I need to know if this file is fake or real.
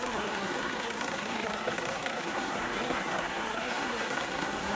fake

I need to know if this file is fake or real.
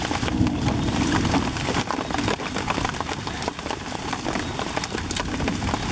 real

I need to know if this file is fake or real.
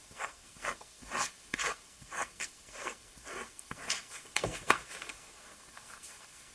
fake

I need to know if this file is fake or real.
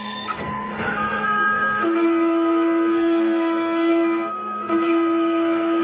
fake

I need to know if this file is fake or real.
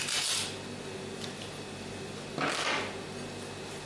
real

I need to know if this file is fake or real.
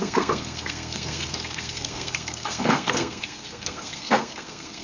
fake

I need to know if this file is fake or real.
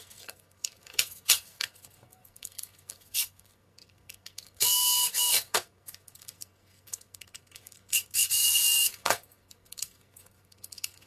fake